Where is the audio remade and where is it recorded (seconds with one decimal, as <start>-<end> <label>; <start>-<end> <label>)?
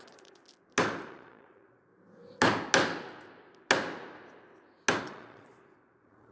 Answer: 0.0-0.4 remade; 0.4-1.1 recorded; 1.1-1.9 remade; 1.9-5.0 recorded; 5.0-6.3 remade